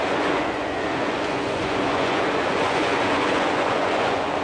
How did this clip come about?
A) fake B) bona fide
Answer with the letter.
A